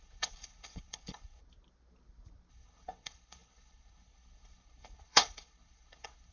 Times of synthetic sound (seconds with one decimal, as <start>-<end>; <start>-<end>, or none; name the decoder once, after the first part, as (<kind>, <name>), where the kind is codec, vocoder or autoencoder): 0.0-1.4 (codec, HILCodec); 2.5-6.3